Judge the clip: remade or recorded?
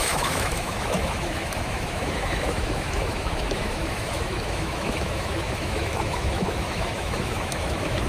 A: remade